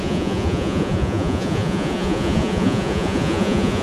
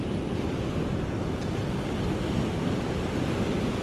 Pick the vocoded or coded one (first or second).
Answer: first